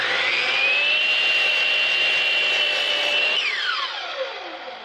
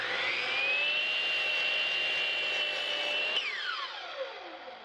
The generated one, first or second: first